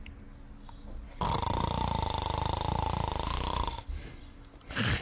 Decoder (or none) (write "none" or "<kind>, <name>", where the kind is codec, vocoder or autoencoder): none